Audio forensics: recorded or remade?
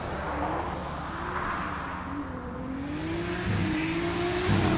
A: recorded